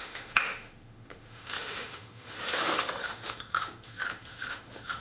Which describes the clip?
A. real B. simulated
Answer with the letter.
B